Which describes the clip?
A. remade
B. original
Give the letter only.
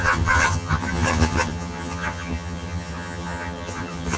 A